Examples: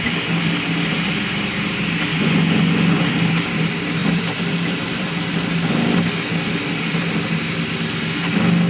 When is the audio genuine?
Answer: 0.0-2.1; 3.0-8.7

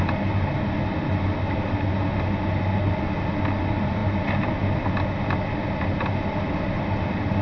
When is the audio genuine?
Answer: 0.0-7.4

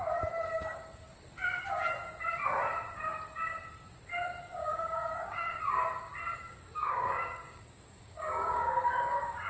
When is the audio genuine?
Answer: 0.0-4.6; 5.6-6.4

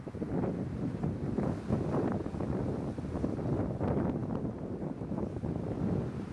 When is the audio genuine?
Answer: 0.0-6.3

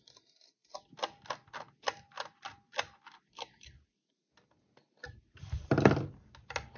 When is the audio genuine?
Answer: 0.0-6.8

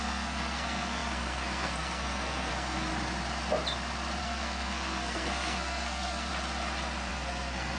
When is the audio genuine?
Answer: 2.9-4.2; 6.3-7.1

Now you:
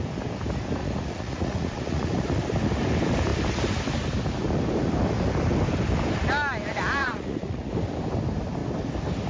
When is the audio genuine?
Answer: 0.0-0.8; 2.2-7.0; 7.7-9.3

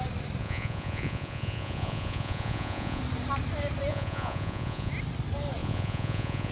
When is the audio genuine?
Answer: 0.0-0.4; 3.0-3.9; 4.9-5.6